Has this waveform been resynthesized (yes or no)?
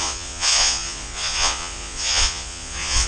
yes